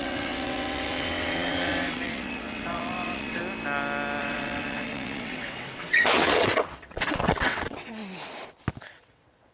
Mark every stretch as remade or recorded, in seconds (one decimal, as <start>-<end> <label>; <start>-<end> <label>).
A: 0.0-3.4 remade; 3.4-4.2 recorded; 4.2-8.0 remade; 8.0-8.8 recorded; 8.8-9.5 remade